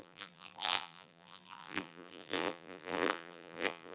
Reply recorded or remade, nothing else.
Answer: remade